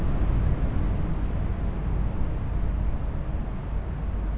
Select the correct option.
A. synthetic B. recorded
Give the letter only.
B